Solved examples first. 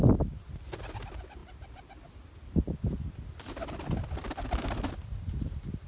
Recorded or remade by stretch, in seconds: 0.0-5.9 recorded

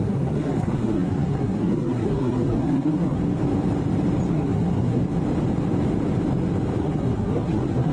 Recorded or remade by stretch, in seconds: 0.0-3.2 remade; 3.2-4.3 recorded; 4.3-5.0 remade; 5.0-6.8 recorded; 6.8-7.9 remade

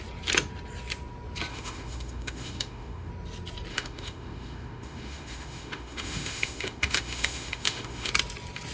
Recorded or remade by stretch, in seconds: 0.0-1.5 recorded; 1.5-3.1 remade; 3.1-3.7 recorded; 3.7-8.1 remade; 8.1-8.7 recorded

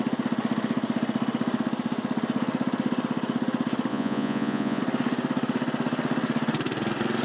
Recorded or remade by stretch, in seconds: 0.0-3.9 recorded; 3.9-4.8 remade; 4.8-7.2 recorded